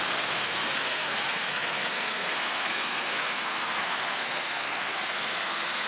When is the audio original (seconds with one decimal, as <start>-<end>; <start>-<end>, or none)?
none

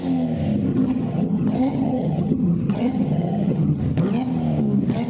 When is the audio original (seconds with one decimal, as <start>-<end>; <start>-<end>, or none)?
0.0-0.7; 3.8-5.1

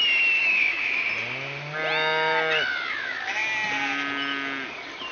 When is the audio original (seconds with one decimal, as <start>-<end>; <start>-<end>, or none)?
0.0-0.4; 1.0-2.7; 3.2-5.1

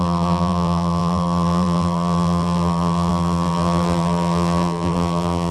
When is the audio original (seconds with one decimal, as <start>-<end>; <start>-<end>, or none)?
none

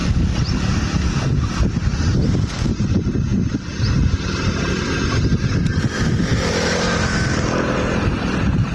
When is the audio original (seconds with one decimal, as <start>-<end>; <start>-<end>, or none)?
0.0-1.1